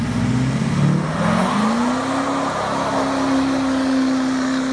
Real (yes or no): yes